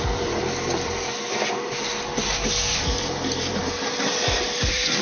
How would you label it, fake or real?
fake